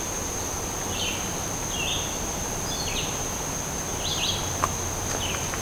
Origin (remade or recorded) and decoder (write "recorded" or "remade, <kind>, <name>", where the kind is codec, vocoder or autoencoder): recorded